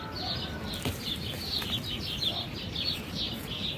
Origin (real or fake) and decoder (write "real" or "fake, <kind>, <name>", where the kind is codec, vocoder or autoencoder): real